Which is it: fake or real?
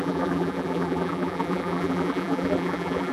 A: fake